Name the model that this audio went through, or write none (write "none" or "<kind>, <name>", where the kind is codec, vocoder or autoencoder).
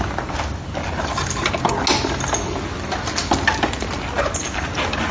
none